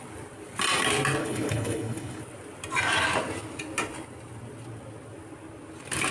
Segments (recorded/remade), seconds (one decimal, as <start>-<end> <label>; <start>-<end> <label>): 0.0-1.2 recorded; 1.2-2.2 remade; 2.2-6.1 recorded